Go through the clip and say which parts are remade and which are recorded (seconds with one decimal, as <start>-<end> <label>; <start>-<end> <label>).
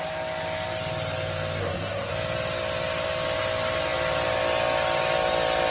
0.0-1.6 recorded; 1.6-2.1 remade; 2.1-5.7 recorded